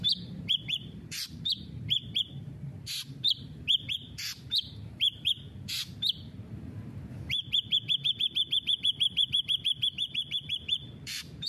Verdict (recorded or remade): remade